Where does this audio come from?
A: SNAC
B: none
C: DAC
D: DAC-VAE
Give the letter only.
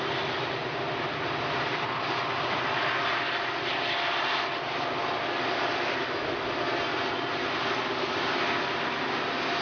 B